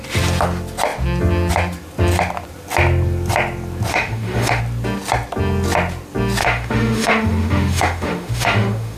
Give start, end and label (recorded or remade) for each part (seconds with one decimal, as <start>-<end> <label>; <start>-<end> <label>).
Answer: 0.0-3.9 recorded; 3.9-4.6 remade; 4.6-6.4 recorded; 6.4-9.0 remade